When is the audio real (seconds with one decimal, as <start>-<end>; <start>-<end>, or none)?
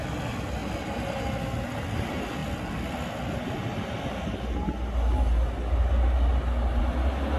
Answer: 0.0-7.4